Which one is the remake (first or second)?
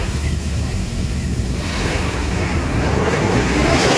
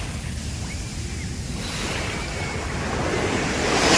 first